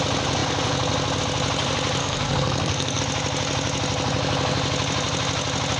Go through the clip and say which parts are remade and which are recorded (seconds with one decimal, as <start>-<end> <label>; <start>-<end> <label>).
0.0-2.0 recorded; 2.0-3.0 remade; 3.0-5.8 recorded